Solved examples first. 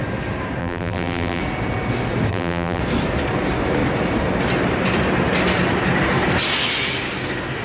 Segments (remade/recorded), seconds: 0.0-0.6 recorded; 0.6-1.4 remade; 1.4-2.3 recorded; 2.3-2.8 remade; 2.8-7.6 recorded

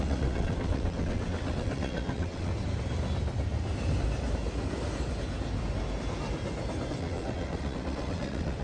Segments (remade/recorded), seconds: 0.0-2.5 remade; 2.5-6.9 recorded; 6.9-8.6 remade

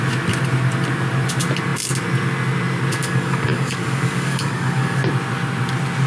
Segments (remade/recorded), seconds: 0.0-3.0 recorded; 3.0-5.0 remade; 5.0-6.1 recorded

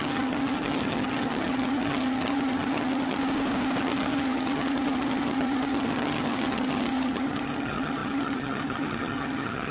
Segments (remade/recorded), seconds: 0.0-3.2 remade; 3.2-3.8 recorded; 3.8-9.7 remade

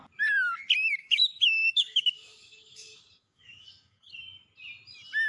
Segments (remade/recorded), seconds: 0.0-1.0 recorded; 1.0-4.1 remade; 4.1-5.3 recorded

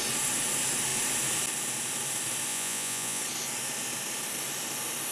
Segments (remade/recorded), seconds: 0.0-2.5 recorded; 2.5-3.2 remade; 3.2-5.1 recorded

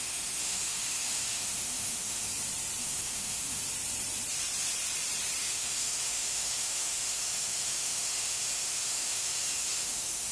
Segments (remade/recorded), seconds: 0.0-2.3 remade; 2.3-2.8 recorded; 2.8-3.6 remade; 3.6-5.4 recorded; 5.4-10.3 remade

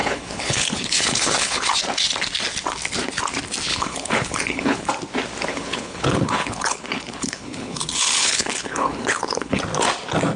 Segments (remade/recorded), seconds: 0.0-1.8 remade; 1.8-3.7 recorded; 3.7-4.9 remade; 4.9-5.5 recorded; 5.5-9.6 remade; 9.6-10.4 recorded